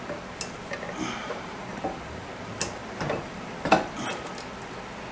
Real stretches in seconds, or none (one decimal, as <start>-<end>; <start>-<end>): 0.0-1.2; 4.3-5.1